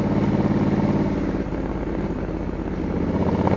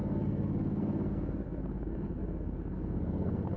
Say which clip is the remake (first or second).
second